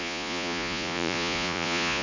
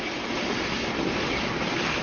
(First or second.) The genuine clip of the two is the second